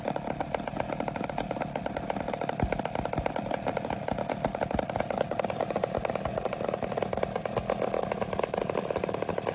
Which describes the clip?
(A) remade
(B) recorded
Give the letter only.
B